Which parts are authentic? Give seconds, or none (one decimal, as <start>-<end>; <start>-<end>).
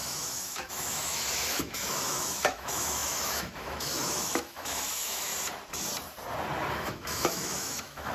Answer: 5.3-6.7